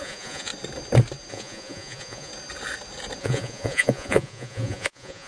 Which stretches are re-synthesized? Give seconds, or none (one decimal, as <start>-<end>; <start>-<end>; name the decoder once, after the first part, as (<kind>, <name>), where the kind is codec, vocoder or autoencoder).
0.0-0.5 (vocoder, Vocos); 1.3-2.3; 3.2-5.3